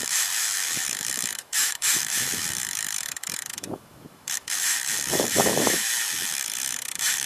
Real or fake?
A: fake